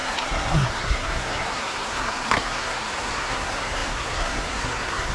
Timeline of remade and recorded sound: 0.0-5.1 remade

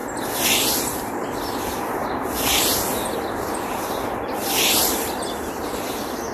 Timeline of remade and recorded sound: 0.0-6.3 recorded

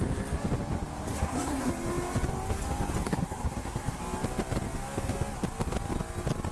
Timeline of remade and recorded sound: 0.0-1.1 recorded; 1.1-1.7 remade; 1.7-3.0 recorded; 3.0-4.0 remade; 4.0-6.5 recorded

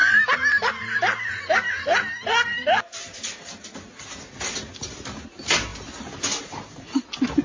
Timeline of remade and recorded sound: 0.0-7.4 recorded

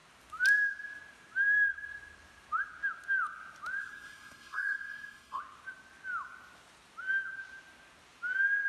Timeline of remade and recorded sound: 0.0-3.8 recorded; 3.8-5.4 remade; 5.4-8.7 recorded